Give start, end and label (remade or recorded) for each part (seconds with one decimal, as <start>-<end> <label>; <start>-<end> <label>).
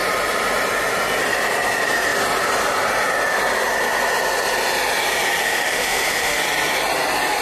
0.0-5.4 recorded; 5.4-6.4 remade; 6.4-7.4 recorded